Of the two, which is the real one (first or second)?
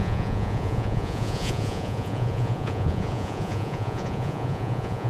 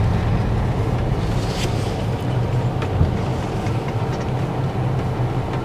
second